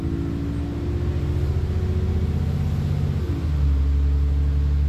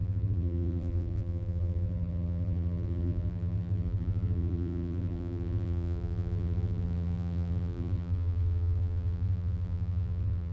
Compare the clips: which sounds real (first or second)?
first